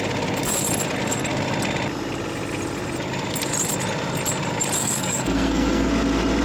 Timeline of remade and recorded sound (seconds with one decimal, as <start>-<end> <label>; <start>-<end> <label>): 0.0-4.8 recorded; 4.8-5.9 remade; 5.9-6.4 recorded